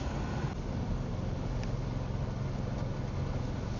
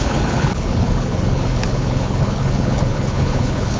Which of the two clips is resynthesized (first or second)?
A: second